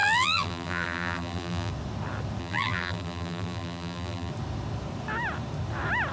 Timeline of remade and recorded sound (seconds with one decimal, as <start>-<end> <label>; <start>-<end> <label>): 0.0-1.7 remade; 1.7-2.4 recorded; 2.4-4.3 remade; 4.3-6.1 recorded